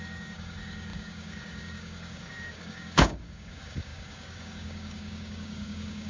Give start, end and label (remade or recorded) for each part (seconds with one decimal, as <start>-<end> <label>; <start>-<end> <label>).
0.0-6.1 remade

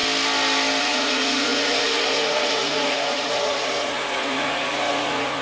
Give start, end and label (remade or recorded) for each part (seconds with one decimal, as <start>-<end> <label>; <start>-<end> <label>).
0.0-0.8 recorded; 0.8-5.4 remade